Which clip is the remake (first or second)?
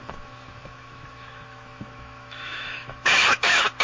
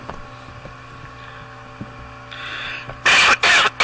first